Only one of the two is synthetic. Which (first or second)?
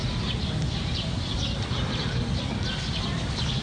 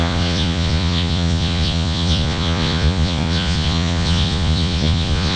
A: second